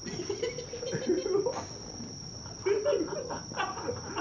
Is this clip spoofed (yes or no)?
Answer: no